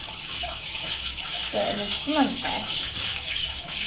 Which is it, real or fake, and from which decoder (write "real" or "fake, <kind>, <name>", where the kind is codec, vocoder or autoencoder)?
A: fake, codec, DAC